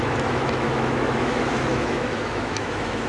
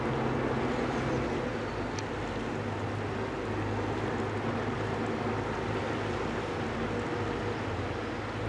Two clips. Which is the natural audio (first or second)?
second